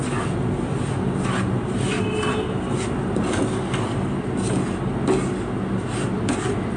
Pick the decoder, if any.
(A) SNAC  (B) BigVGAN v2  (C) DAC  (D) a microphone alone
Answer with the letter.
D